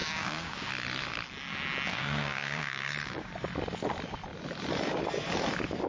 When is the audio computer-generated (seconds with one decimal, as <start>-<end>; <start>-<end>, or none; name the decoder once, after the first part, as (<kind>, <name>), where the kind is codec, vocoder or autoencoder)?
0.0-0.7 (codec, DAC); 1.9-3.3